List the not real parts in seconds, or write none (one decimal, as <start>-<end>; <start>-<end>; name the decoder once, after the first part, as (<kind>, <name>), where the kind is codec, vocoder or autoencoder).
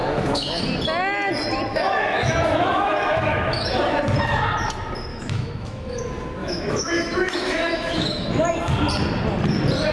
0.0-0.6 (autoencoder, DAC-VAE); 1.7-3.7; 5.1-6.0; 6.4-8.3